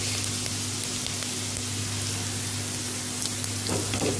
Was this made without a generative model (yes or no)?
yes